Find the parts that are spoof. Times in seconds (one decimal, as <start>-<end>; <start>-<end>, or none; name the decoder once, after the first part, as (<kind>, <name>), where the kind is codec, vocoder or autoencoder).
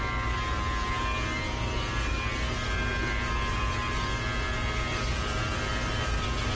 none